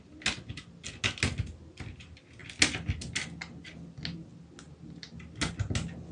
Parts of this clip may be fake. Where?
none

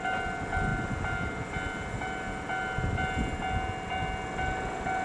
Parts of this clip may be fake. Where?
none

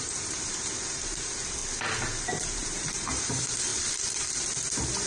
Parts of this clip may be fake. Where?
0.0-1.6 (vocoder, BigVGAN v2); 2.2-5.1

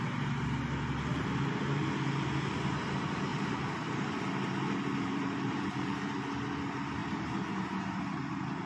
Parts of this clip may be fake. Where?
1.1-2.3 (vocoder, BigVGAN v2); 3.3-4.2; 4.9-6.1; 7.0-8.7